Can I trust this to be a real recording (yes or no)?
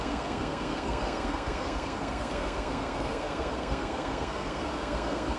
no